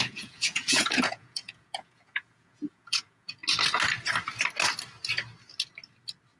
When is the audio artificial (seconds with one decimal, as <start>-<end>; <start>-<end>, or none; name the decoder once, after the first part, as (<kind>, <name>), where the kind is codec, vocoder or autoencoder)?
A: 0.0-3.4 (vocoder, Vocos)